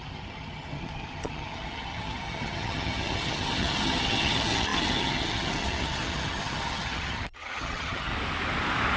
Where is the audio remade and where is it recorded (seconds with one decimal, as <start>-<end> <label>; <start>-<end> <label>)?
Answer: 0.0-8.1 remade; 8.1-9.0 recorded